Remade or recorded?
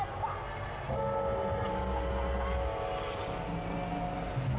recorded